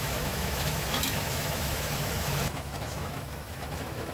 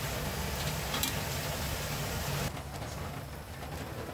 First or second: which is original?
second